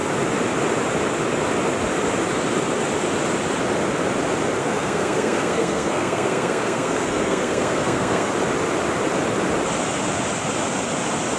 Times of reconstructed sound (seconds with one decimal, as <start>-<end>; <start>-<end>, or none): 4.6-8.3